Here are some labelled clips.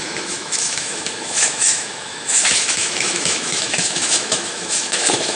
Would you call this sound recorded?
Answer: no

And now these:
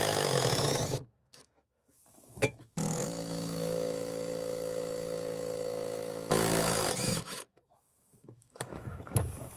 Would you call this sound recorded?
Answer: no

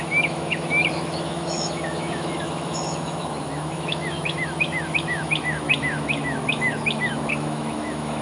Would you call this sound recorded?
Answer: no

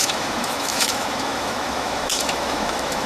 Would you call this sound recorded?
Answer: no